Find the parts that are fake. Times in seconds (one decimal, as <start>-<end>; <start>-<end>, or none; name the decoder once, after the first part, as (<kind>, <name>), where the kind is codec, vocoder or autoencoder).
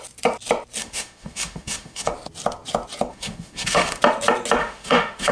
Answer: 0.8-2.1 (autoencoder, DAC-VAE); 3.1-4.0; 4.6-5.3